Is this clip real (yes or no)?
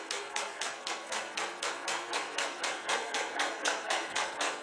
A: no